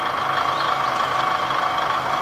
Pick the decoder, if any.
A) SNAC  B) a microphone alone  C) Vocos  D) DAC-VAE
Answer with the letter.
B